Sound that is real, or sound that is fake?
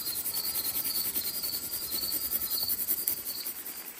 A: real